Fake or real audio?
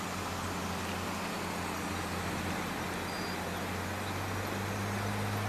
real